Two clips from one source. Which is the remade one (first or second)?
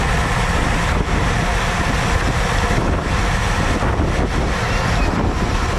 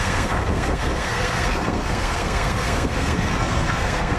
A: second